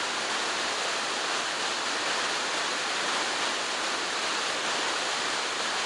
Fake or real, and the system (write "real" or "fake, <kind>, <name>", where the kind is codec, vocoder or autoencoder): fake, vocoder, BigVGAN v2